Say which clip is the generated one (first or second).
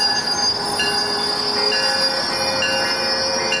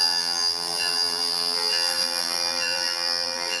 second